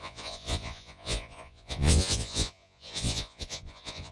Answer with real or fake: fake